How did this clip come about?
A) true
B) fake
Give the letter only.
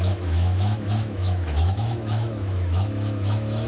B